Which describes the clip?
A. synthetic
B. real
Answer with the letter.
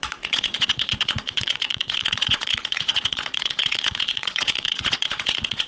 A